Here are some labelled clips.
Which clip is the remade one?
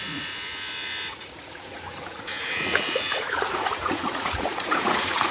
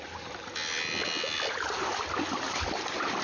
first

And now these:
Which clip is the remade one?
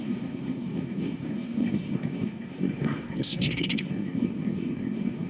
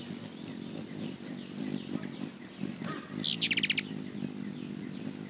first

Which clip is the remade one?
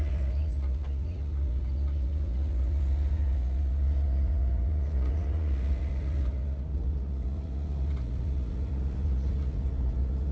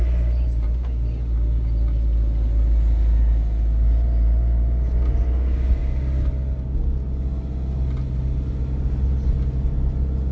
first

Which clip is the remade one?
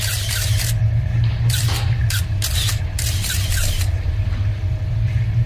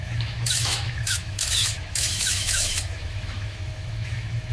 second